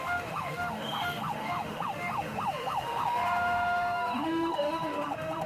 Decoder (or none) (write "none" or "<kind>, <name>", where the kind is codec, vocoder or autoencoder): autoencoder, DAC-VAE